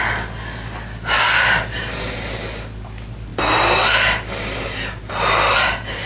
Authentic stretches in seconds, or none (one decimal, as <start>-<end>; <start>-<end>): 0.0-6.1